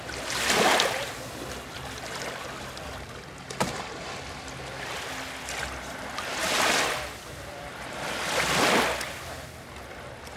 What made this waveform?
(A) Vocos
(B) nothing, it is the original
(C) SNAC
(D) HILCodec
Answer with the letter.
B